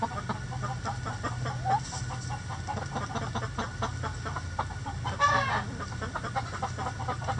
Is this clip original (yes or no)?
yes